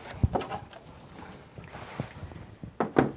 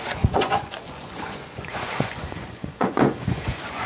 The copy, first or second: second